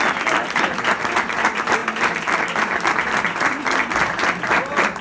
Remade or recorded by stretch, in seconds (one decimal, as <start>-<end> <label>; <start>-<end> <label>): 0.0-5.0 recorded